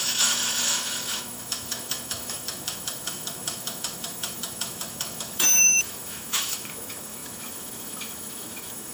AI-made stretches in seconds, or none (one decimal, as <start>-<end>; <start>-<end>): 0.0-8.9